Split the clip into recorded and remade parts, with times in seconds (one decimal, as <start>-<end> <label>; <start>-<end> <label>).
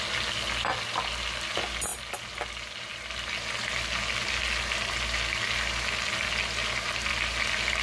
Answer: 0.0-7.8 recorded